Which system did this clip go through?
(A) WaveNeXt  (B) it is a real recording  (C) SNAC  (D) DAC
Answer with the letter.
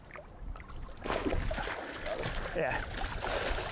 B